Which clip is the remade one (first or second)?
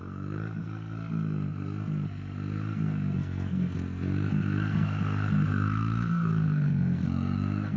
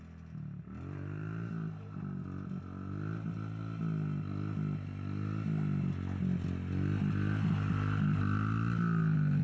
first